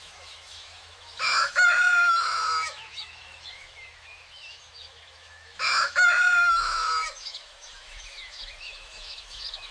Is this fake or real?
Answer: fake